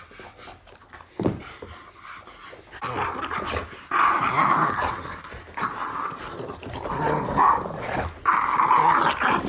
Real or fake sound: real